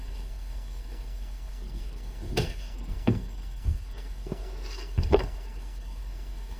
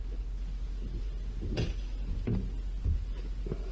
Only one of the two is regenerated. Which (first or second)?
first